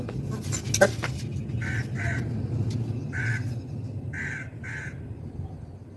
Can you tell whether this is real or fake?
real